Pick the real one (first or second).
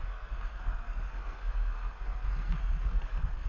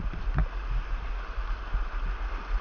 second